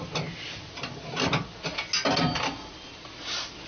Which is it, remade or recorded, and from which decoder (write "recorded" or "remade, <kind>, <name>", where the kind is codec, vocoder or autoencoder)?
recorded